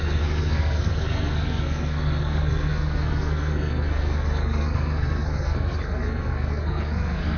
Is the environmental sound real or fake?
fake